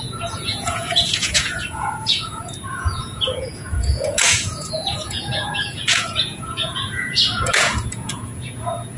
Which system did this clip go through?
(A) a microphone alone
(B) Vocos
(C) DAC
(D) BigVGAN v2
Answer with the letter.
B